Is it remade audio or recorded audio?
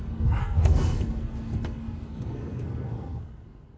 remade